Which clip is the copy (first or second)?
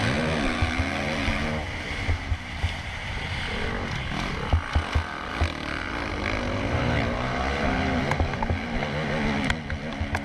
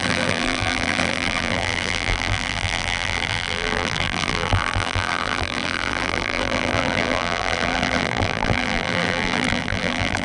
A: second